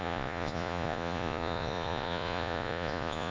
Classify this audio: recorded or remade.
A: remade